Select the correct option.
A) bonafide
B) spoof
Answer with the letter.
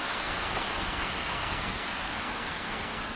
B